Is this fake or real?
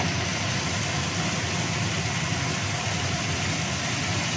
real